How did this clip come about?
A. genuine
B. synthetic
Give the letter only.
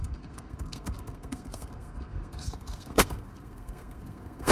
B